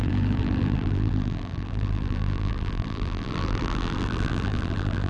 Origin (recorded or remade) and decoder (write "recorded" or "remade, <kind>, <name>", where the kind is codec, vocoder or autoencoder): remade, vocoder, BigVGAN v2